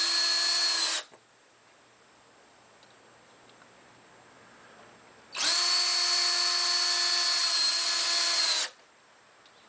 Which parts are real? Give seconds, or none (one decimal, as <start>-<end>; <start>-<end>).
0.0-9.7